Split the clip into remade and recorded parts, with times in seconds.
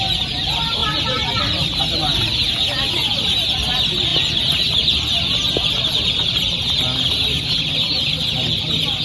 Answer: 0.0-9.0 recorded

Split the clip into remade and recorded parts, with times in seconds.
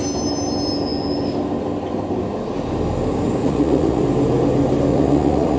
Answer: 0.0-3.4 recorded; 3.4-4.0 remade; 4.0-4.9 recorded; 4.9-5.6 remade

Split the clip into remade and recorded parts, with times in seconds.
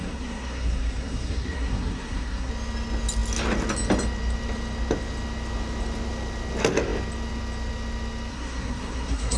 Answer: 0.0-2.5 remade; 2.5-8.3 recorded; 8.3-9.4 remade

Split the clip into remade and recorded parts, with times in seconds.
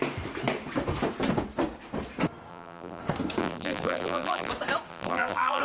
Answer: 0.0-2.5 recorded; 2.5-3.0 remade; 3.0-3.4 recorded; 3.4-4.5 remade; 4.5-4.9 recorded; 4.9-5.6 remade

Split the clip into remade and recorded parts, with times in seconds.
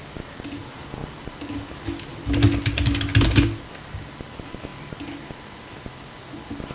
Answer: 0.0-6.7 recorded